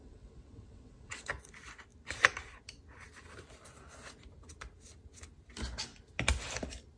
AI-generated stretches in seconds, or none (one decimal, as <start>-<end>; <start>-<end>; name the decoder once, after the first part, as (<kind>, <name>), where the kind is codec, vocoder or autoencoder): 0.0-1.3 (vocoder, WaveNeXt)